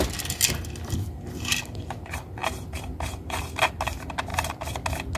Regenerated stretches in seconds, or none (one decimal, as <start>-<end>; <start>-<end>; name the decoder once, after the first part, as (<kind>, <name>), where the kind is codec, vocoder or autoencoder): 2.4-3.5 (vocoder, BigVGAN v2)

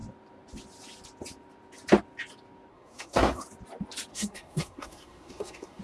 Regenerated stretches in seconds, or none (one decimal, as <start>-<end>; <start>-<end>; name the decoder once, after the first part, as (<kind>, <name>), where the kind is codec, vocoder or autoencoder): 2.7-3.4 (codec, SNAC); 4.1-5.8